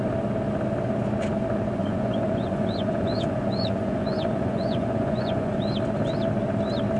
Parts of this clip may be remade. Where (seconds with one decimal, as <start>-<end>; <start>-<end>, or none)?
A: 1.8-5.6